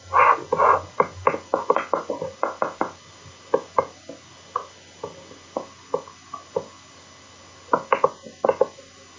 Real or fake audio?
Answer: real